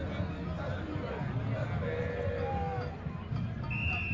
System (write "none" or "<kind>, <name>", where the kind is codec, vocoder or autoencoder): none